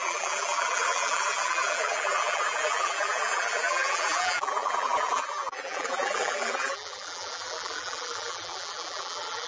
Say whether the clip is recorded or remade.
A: remade